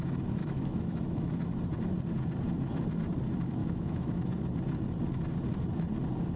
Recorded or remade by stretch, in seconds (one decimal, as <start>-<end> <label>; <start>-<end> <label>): 0.0-0.4 recorded; 0.4-1.4 remade; 1.4-3.6 recorded; 3.6-4.3 remade; 4.3-6.4 recorded